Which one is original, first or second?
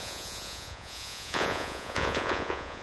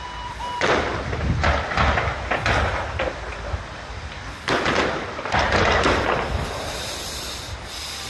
second